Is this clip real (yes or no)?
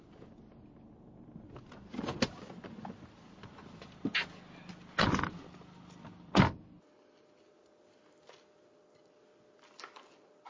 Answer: yes